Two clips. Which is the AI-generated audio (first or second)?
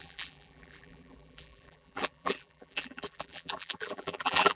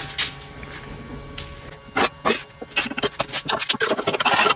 first